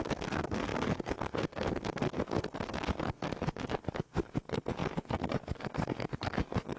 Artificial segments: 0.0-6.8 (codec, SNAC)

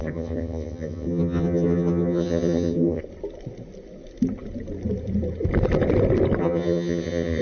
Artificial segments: 0.0-3.0 (vocoder, HiFi-GAN); 6.4-7.4

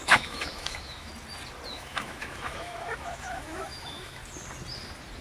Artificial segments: 0.0-1.1 (autoencoder, DAC-VAE); 1.7-4.2